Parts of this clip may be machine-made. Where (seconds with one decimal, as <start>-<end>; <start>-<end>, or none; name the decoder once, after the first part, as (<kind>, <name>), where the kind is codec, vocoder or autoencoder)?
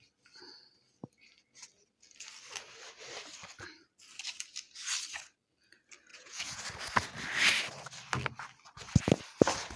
6.1-6.6 (vocoder, Vocos)